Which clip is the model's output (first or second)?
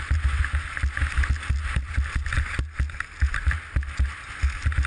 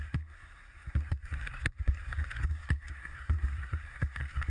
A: second